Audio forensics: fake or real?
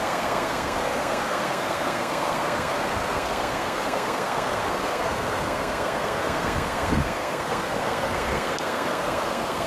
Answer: fake